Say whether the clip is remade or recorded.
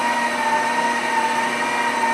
recorded